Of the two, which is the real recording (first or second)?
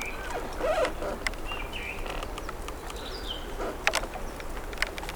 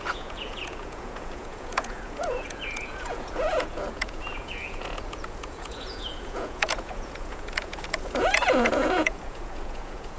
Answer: first